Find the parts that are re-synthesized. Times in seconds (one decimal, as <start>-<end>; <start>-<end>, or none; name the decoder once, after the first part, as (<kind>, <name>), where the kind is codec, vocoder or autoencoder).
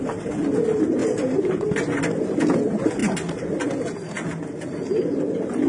1.0-1.7 (vocoder, BigVGAN v2)